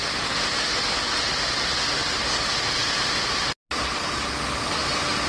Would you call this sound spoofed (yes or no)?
no